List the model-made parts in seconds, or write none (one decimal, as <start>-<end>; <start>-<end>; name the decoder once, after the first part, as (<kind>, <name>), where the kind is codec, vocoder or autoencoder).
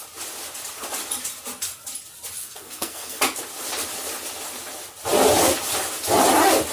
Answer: 2.4-3.2 (codec, SNAC)